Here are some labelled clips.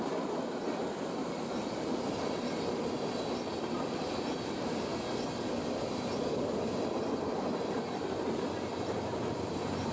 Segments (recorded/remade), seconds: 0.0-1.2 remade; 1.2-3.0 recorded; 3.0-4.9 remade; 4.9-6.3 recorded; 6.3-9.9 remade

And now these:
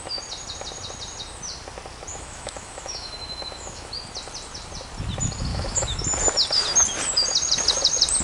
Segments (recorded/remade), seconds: 0.0-2.1 recorded; 2.1-3.9 remade; 3.9-5.5 recorded; 5.5-6.0 remade; 6.0-8.2 recorded

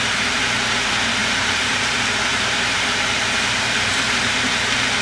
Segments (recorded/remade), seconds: 0.0-1.2 recorded; 1.2-1.8 remade; 1.8-2.3 recorded; 2.3-4.5 remade; 4.5-5.0 recorded

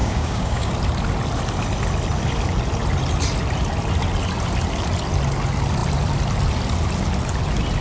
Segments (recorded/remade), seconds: 0.0-0.7 remade; 0.7-7.8 recorded

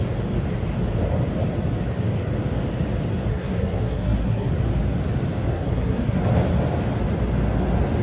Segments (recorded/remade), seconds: 0.0-3.3 recorded; 3.3-4.5 remade; 4.5-5.5 recorded; 5.5-6.2 remade; 6.2-8.0 recorded